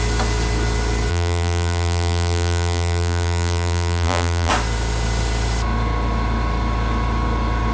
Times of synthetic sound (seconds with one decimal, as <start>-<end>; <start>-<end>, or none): 1.1-4.5